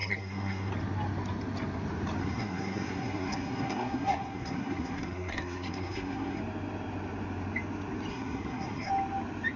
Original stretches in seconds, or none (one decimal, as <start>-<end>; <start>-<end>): 0.7-2.2; 6.4-8.1; 8.9-9.6